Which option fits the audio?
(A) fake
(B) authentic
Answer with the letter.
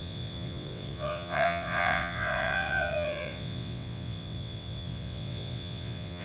A